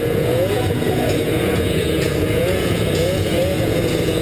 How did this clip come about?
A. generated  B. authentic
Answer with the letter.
A